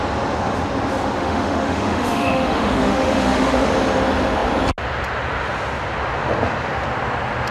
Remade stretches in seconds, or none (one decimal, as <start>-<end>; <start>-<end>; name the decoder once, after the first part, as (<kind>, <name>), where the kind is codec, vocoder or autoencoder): 1.2-3.7 (autoencoder, DAC-VAE)